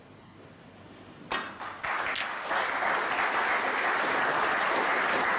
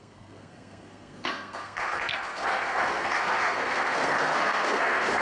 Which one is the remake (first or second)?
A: second